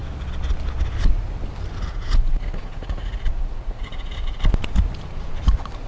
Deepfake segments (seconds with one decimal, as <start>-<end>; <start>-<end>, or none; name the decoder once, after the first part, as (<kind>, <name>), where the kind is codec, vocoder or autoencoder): 1.9-4.4 (vocoder, Vocos)